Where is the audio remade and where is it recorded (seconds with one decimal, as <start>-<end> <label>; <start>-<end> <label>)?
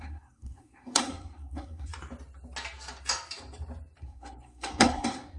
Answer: 0.0-1.9 remade; 1.9-4.0 recorded; 4.0-5.4 remade